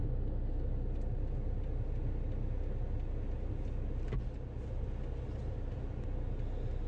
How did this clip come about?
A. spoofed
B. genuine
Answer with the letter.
B